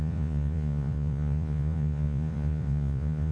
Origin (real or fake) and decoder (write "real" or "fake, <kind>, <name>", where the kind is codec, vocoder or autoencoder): fake, vocoder, Vocos